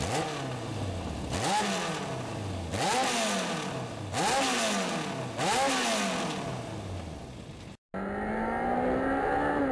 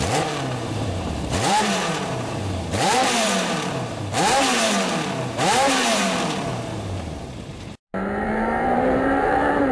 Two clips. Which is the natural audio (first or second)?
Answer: first